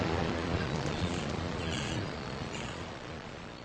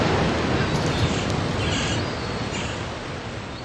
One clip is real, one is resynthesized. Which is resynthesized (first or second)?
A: first